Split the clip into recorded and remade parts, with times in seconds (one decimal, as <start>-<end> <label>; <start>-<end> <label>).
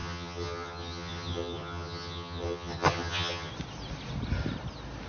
0.0-3.5 remade; 3.5-5.1 recorded